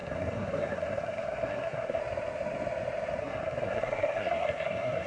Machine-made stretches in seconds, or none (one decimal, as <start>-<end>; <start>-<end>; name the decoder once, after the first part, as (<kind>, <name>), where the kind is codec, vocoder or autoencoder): 0.0-2.0 (codec, SNAC); 3.2-5.1